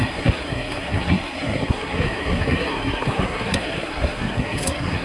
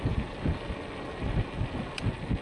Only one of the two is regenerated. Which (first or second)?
first